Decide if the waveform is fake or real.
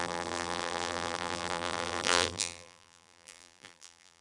fake